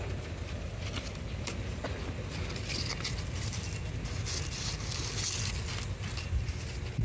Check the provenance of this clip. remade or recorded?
recorded